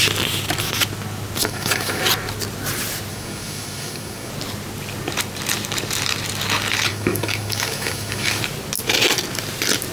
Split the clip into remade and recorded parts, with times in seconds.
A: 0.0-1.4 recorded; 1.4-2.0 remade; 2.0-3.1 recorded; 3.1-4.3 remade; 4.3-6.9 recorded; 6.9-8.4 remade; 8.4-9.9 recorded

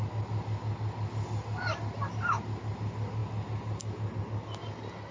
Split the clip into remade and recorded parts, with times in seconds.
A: 0.0-5.1 recorded

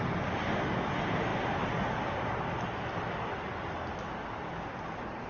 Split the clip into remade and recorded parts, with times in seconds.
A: 0.0-5.3 recorded